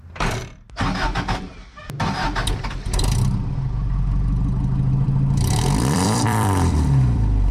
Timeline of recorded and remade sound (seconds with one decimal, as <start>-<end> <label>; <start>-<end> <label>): 0.0-0.4 remade; 0.4-4.9 recorded; 4.9-7.5 remade